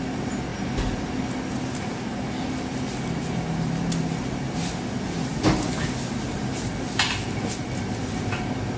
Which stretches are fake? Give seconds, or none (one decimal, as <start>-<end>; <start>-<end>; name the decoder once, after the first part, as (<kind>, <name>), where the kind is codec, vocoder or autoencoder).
none